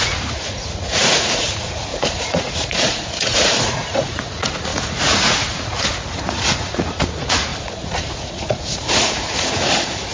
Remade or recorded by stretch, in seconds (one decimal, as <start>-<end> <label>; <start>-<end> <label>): 0.0-10.1 remade